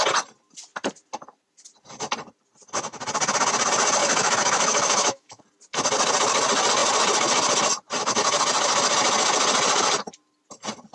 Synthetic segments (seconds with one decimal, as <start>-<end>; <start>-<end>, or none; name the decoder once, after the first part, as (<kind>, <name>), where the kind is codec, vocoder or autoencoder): 4.0-5.4 (autoencoder, DAC-VAE)